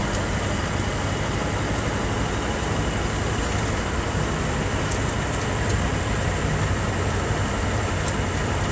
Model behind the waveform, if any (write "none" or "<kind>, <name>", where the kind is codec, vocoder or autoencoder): none